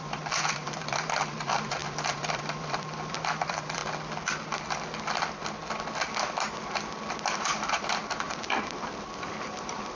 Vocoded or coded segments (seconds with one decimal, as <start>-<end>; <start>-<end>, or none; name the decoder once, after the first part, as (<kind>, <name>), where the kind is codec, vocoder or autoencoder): 0.0-3.8 (vocoder, BigVGAN v2); 7.1-10.0